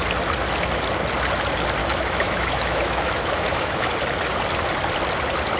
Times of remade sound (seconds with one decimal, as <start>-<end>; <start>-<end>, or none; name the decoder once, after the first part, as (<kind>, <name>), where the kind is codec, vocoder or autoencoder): 1.8-3.9 (autoencoder, DAC-VAE)